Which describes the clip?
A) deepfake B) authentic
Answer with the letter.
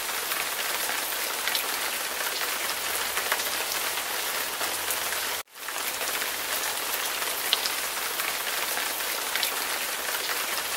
B